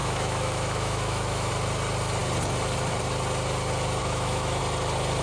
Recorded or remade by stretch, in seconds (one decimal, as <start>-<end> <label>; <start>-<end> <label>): 0.0-1.5 remade; 1.5-4.0 recorded; 4.0-4.6 remade; 4.6-5.2 recorded